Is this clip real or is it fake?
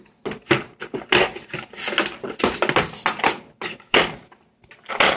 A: real